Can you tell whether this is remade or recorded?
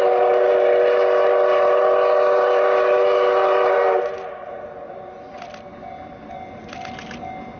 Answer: recorded